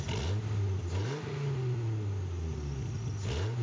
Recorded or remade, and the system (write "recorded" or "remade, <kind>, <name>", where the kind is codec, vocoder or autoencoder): recorded